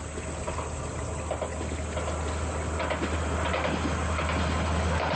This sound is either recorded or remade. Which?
recorded